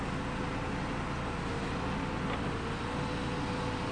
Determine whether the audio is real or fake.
real